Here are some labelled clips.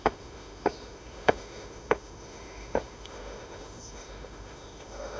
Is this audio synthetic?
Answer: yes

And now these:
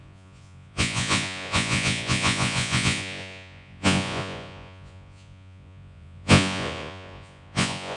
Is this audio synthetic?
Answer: yes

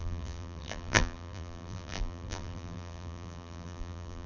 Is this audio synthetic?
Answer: yes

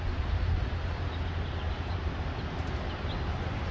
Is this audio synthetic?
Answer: no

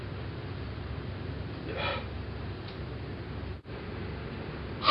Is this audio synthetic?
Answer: no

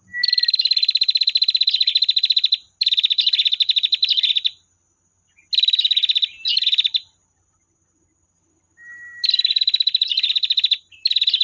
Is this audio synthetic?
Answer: no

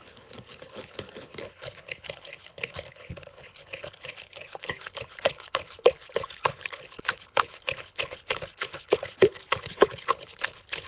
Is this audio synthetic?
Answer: yes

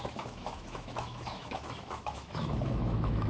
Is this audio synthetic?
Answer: yes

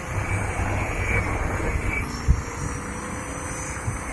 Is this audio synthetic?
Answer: yes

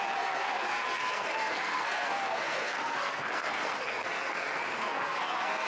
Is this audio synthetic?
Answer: yes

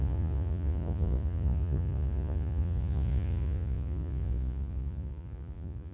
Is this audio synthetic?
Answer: yes